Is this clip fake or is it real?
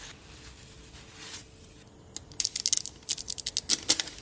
real